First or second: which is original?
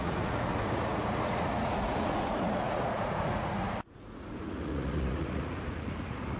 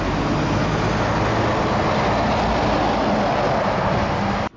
second